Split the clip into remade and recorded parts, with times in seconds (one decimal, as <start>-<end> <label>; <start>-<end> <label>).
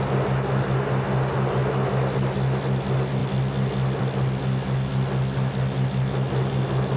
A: 0.0-7.0 recorded